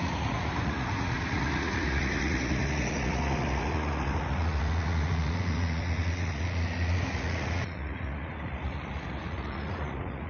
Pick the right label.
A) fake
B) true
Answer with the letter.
A